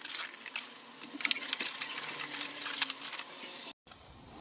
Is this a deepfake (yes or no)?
no